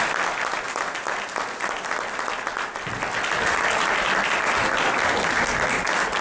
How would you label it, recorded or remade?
recorded